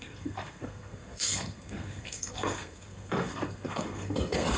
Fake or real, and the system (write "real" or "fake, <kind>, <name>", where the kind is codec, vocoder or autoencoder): fake, codec, SNAC